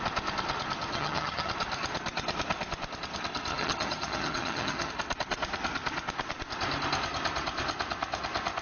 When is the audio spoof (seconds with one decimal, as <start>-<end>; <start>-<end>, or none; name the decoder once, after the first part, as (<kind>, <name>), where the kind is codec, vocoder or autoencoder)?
0.9-1.5 (vocoder, HiFi-GAN); 3.5-4.9